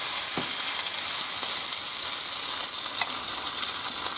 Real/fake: real